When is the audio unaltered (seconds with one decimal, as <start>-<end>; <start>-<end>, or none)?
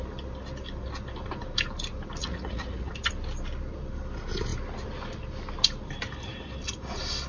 0.0-2.2; 2.9-7.3